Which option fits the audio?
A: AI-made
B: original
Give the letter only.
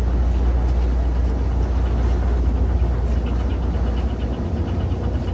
B